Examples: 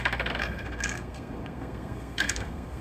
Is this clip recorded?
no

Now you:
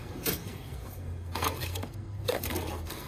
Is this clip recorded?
no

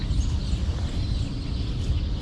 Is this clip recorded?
yes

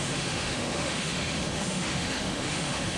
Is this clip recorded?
no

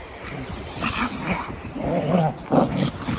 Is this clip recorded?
yes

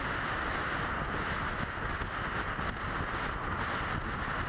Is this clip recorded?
yes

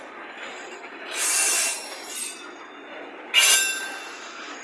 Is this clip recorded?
yes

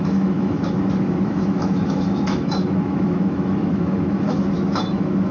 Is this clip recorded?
no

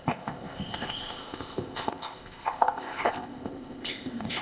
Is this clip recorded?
no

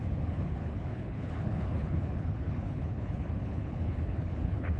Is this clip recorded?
no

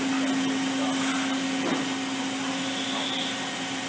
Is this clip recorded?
yes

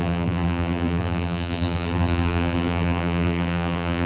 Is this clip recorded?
no